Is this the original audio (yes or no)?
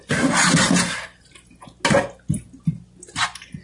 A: yes